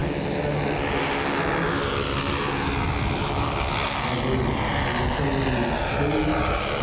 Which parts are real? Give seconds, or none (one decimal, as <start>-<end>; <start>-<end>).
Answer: 0.0-6.8